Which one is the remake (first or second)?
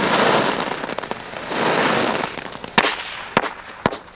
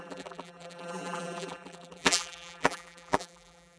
second